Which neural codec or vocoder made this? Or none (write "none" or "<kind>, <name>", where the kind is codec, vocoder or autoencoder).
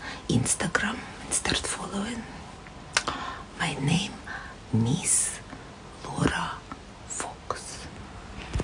none